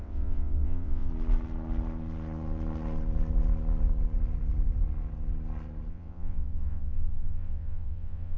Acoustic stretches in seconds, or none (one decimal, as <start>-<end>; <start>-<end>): 1.1-5.9

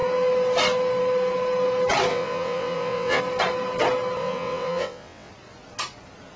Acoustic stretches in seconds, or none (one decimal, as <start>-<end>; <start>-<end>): 0.0-2.1; 3.2-4.2; 5.3-6.4